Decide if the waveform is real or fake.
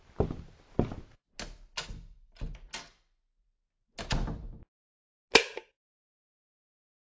real